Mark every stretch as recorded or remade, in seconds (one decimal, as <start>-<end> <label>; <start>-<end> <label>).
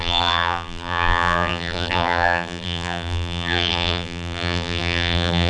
0.0-5.5 remade